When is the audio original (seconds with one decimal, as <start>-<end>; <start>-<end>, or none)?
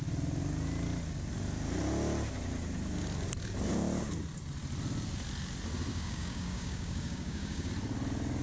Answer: 0.0-5.9; 7.7-8.4